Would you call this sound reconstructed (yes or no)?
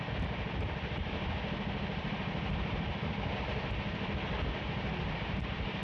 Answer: no